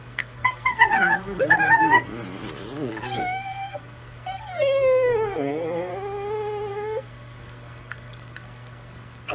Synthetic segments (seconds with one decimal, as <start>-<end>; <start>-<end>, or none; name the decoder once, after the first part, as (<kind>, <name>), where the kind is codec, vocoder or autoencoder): 0.0-2.1 (codec, SNAC); 2.9-5.9; 6.7-9.3